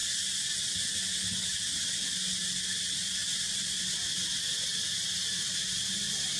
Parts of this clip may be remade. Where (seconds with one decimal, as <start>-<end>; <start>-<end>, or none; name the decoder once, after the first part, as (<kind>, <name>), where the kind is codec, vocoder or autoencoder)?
none